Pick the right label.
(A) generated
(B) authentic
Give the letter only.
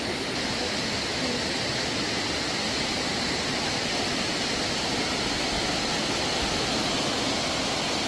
B